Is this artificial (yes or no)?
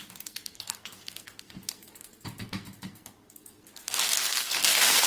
yes